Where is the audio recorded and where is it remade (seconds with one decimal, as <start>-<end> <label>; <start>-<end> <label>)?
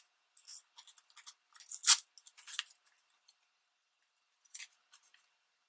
0.0-5.7 recorded